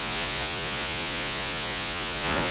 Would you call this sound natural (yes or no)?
no